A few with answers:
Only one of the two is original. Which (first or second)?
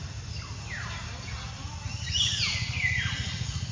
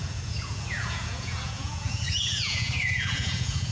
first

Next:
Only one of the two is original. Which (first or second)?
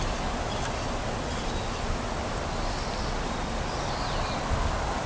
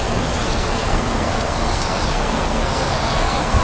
first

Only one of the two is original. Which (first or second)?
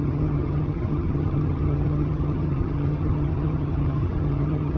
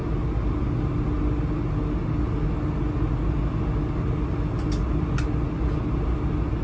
second